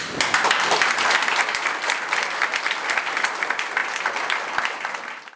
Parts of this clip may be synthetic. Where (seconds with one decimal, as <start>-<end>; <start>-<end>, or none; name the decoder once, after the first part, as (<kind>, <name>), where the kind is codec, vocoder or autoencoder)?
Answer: none